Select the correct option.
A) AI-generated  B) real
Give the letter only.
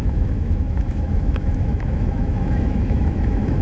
A